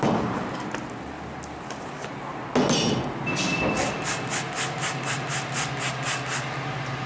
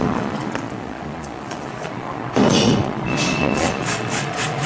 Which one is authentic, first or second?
first